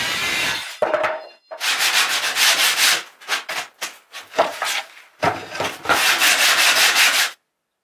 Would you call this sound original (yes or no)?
yes